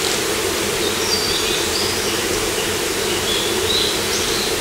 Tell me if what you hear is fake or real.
real